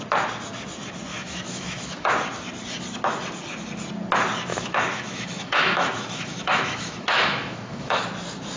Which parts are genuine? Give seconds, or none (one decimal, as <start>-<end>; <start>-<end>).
0.0-1.1; 2.1-4.5; 8.0-8.6